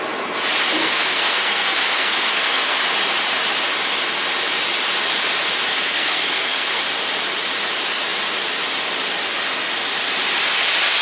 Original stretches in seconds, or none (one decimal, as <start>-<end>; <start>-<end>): 0.0-0.8; 2.8-5.7; 6.8-11.0